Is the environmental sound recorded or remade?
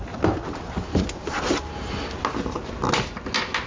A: recorded